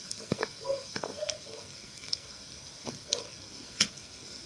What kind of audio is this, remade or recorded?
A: remade